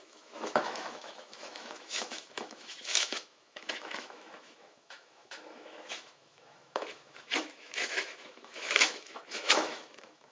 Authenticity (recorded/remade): remade